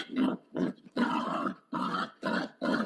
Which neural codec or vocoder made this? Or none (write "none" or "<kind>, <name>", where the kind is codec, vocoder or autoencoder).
vocoder, WaveNeXt